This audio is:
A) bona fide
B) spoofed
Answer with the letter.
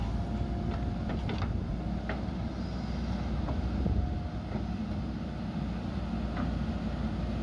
A